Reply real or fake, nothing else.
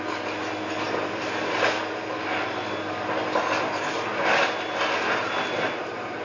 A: real